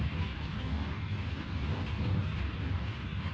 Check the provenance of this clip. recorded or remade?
remade